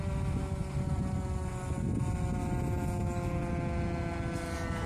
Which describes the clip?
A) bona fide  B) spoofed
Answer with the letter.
A